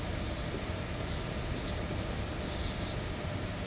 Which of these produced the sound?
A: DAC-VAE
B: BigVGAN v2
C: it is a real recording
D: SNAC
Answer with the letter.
C